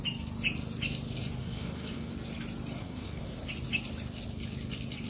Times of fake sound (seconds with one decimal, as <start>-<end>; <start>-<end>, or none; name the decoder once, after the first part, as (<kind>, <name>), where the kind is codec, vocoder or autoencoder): 1.4-2.1 (codec, SNAC); 2.8-3.4